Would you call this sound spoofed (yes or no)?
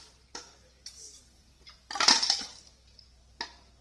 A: no